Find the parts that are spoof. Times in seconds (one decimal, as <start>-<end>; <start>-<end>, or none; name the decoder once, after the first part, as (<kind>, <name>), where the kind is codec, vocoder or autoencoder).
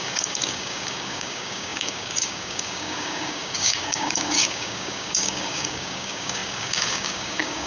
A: 0.0-7.7 (codec, DAC)